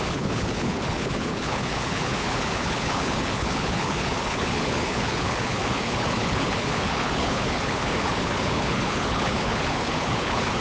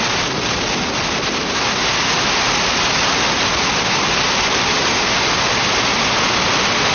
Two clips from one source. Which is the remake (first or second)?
first